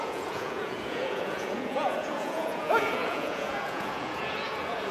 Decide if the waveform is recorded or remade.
remade